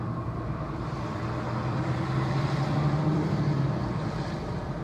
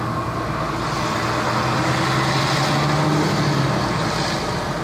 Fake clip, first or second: first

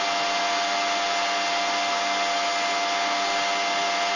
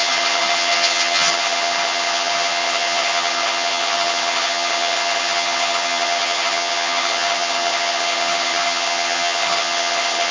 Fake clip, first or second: second